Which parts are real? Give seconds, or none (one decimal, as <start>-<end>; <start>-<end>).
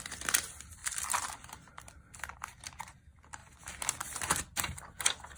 0.0-0.8; 2.2-5.4